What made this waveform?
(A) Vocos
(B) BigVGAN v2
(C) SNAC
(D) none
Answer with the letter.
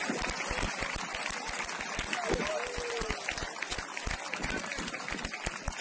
D